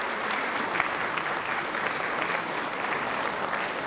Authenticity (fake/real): real